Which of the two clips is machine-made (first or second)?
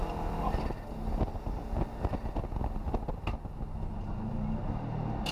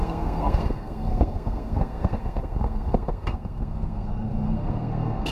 second